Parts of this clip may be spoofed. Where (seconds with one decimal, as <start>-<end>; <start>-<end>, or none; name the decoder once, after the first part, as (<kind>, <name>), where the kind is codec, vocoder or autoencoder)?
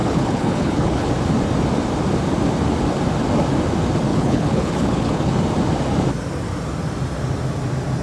0.0-1.1 (codec, HILCodec); 4.1-5.3